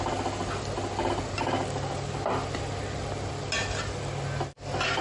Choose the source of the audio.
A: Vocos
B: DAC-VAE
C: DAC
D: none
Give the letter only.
D